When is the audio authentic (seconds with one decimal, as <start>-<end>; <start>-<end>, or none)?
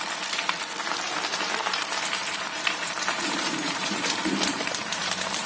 0.0-2.2